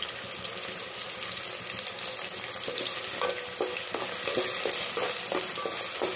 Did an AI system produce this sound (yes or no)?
no